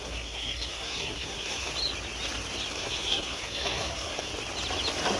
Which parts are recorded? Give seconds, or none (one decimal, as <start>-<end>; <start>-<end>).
1.7-2.7; 4.3-5.2